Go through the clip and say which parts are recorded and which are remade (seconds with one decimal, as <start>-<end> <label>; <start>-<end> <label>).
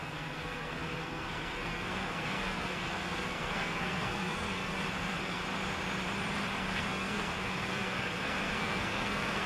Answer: 0.0-5.4 remade; 5.4-6.6 recorded; 6.6-9.5 remade